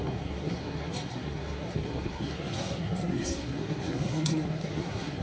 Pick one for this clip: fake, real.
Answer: fake